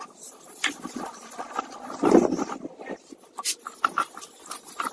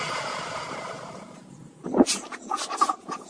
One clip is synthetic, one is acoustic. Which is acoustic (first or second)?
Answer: first